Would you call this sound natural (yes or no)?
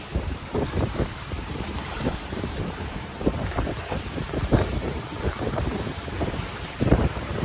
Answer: no